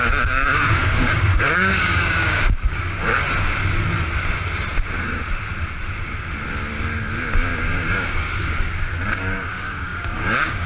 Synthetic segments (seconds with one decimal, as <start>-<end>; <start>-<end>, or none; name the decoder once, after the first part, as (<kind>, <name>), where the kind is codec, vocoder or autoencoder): 0.0-3.2 (codec, DAC); 7.6-10.7

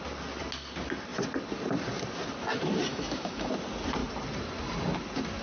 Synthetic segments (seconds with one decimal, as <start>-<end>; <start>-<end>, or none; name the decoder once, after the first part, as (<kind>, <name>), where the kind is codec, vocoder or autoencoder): 2.9-3.5 (autoencoder, DAC-VAE)

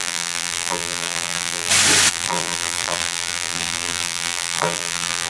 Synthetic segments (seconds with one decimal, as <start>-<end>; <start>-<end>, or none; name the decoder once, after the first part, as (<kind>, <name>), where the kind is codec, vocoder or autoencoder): 0.0-1.7 (vocoder, BigVGAN v2); 2.1-5.3

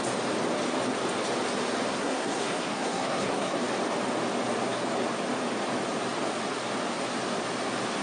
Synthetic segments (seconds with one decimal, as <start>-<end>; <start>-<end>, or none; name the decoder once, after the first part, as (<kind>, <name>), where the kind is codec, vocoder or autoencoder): 1.9-3.6 (codec, SNAC)

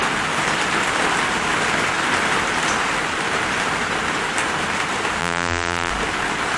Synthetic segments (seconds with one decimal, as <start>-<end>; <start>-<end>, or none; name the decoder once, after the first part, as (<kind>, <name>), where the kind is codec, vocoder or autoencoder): 5.2-5.9 (vocoder, BigVGAN v2)

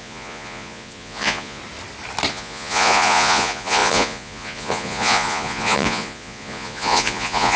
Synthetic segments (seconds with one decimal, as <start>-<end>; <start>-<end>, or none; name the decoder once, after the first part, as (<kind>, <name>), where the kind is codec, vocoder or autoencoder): 0.0-1.6 (vocoder, Vocos); 2.3-7.6